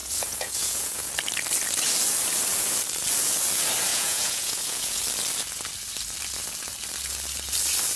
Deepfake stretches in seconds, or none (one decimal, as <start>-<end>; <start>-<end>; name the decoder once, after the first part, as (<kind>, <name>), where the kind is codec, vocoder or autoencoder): 0.0-1.1 (vocoder, Vocos); 3.9-5.0